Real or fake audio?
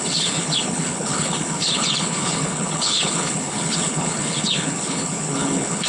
fake